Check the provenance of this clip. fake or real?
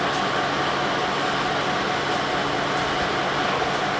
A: real